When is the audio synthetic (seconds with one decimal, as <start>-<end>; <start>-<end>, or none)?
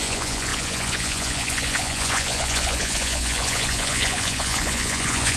0.0-5.4